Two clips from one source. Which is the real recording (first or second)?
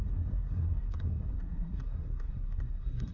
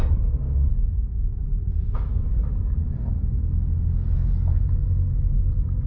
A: second